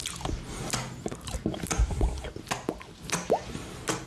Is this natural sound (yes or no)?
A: yes